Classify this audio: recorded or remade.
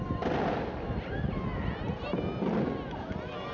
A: recorded